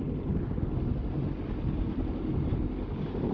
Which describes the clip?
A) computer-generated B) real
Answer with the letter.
B